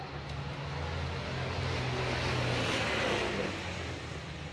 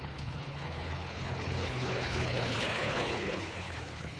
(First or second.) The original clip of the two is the first